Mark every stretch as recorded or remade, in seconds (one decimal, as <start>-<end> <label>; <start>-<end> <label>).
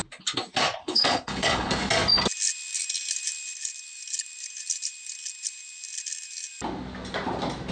0.0-0.8 recorded; 0.8-1.7 remade; 1.7-7.7 recorded